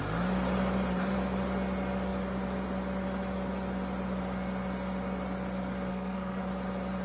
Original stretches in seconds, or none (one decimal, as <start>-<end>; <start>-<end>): 0.0-5.9; 6.4-7.0